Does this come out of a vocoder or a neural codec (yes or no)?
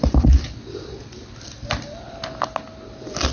no